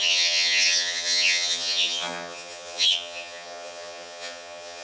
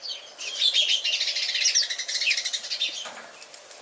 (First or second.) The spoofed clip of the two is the first